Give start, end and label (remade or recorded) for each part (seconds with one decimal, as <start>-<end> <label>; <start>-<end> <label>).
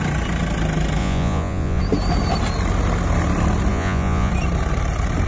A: 0.0-1.0 recorded; 1.0-1.8 remade; 1.8-3.7 recorded; 3.7-4.3 remade; 4.3-5.3 recorded